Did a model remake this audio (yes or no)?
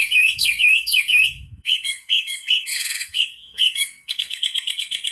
yes